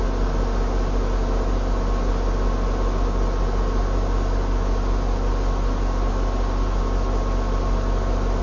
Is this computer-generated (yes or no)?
no